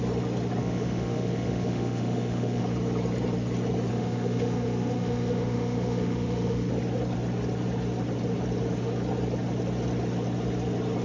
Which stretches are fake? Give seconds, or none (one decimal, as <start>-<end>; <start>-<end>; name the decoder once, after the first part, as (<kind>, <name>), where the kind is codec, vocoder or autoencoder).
0.6-2.6 (autoencoder, DAC-VAE); 3.9-6.7